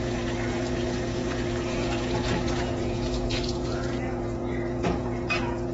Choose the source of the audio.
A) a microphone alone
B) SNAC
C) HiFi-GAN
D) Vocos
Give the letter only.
D